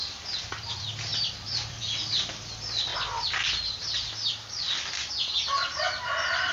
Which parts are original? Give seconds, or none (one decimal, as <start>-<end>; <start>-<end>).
0.0-1.1; 1.8-6.5